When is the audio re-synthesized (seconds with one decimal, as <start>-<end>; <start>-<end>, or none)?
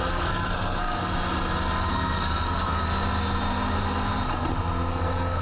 0.0-1.0; 1.9-2.9; 4.9-5.4